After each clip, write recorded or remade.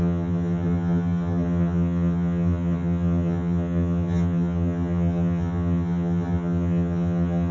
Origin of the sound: remade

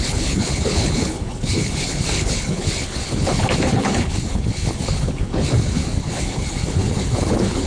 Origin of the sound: remade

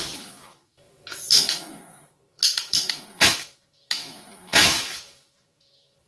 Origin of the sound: remade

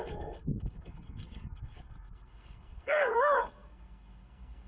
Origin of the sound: remade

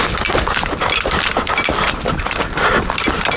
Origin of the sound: recorded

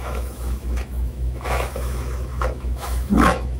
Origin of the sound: remade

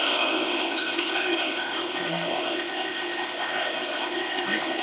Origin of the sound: remade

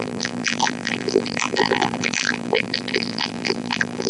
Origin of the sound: remade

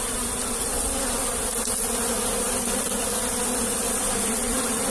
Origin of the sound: recorded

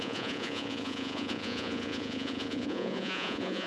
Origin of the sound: remade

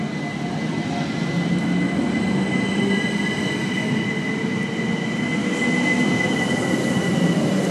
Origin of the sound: recorded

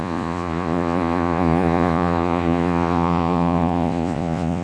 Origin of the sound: remade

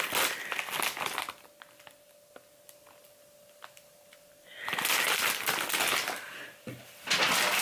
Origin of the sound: recorded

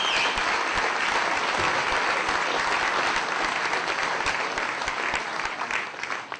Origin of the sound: recorded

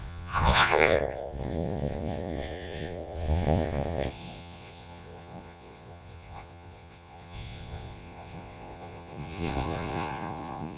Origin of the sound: remade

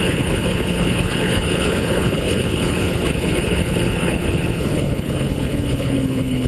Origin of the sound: remade